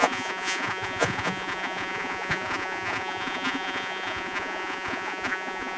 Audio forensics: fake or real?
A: fake